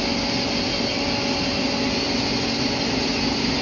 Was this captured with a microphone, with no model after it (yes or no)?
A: yes